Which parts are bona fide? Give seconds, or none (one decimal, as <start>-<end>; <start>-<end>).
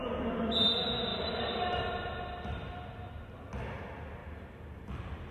0.0-1.1; 1.9-4.2